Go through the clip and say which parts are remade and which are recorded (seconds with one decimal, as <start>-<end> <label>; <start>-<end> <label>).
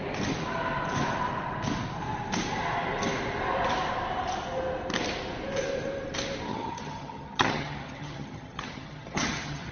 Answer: 0.0-6.5 recorded; 6.5-9.7 remade